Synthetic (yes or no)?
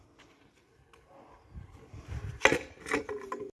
no